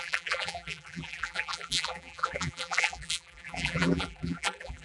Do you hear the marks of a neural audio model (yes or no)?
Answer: yes